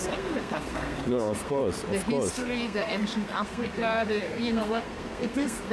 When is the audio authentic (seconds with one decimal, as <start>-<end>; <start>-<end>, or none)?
1.6-2.3

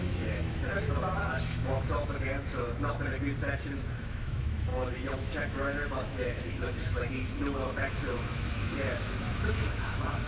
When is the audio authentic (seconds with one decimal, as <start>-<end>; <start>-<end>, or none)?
3.1-4.0

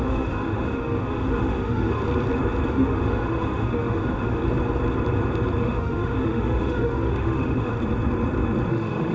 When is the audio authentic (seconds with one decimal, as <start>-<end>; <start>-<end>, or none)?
2.0-2.7; 4.4-5.6; 7.7-8.7

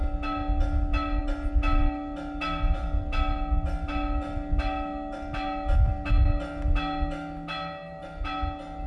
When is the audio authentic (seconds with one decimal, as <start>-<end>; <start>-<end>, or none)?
0.0-8.9

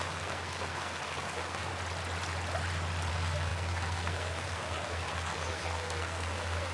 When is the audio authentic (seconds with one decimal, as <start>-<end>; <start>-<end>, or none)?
1.7-3.1